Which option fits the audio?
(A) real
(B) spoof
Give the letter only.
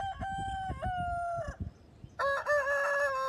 A